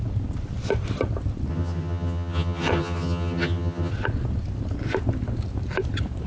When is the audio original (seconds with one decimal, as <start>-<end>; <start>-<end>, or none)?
0.0-1.5; 3.9-6.3